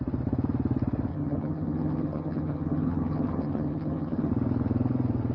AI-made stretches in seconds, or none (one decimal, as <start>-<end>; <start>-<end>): 1.1-4.3